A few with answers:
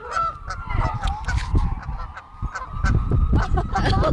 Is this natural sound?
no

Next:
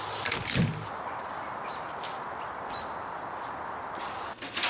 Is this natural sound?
yes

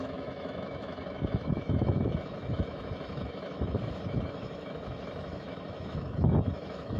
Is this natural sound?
no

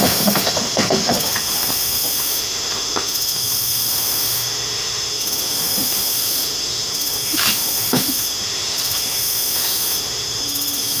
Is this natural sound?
no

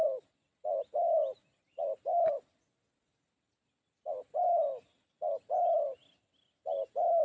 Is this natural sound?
yes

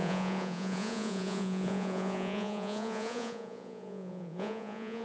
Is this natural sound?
no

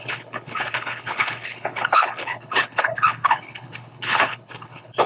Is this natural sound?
no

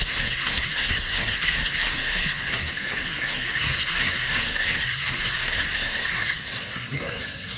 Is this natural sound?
no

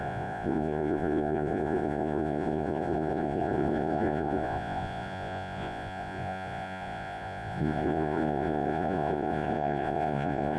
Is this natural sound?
no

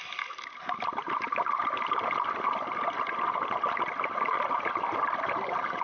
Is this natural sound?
yes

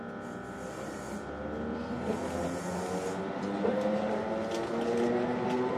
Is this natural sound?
yes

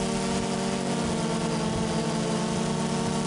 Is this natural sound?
yes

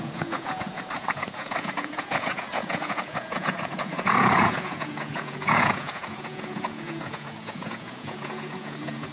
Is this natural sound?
no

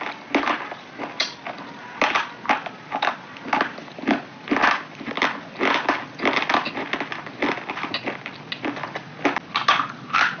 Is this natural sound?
yes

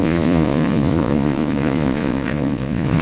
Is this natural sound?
no